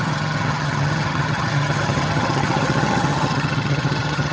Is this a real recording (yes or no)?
no